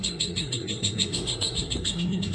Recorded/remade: remade